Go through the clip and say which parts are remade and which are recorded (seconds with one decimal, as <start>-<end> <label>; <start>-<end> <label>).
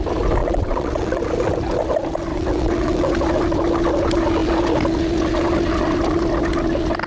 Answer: 0.0-0.4 recorded; 0.4-1.2 remade; 1.2-2.3 recorded; 2.3-3.1 remade; 3.1-7.1 recorded